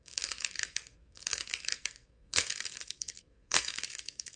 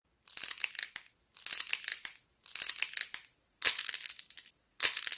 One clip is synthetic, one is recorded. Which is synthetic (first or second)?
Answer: first